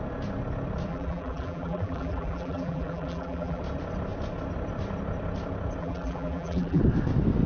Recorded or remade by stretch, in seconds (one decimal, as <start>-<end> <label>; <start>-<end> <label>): 0.0-0.9 recorded; 0.9-3.6 remade; 3.6-5.8 recorded; 5.8-6.8 remade; 6.8-7.5 recorded